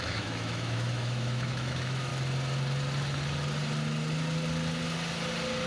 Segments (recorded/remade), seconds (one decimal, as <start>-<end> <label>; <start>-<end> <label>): 0.0-2.1 remade; 2.1-5.7 recorded